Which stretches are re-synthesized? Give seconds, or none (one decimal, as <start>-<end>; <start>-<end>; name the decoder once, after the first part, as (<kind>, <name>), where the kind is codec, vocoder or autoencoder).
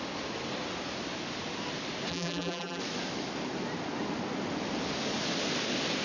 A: 2.1-2.8 (vocoder, BigVGAN v2)